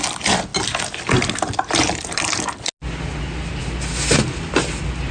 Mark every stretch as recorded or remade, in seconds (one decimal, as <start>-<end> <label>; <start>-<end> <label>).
0.0-5.1 recorded